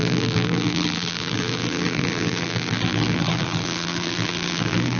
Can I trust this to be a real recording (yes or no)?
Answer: no